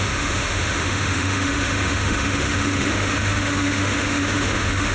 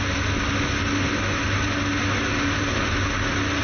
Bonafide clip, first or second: second